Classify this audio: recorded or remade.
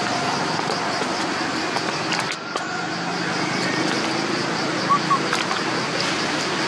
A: recorded